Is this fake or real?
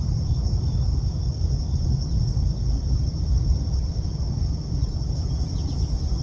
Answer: real